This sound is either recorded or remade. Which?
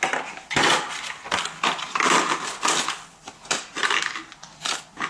recorded